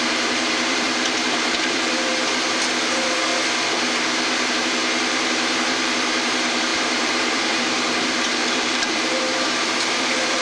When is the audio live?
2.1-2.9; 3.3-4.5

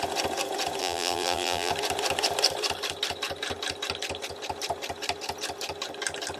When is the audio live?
0.0-0.8; 1.7-6.4

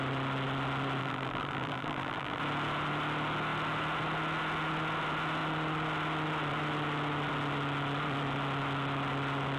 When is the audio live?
0.0-1.0; 2.4-9.6

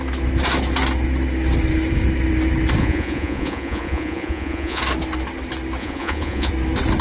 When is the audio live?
0.0-2.8; 4.8-5.8; 6.5-7.0